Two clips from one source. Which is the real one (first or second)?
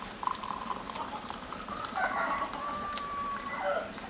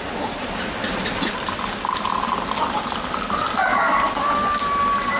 second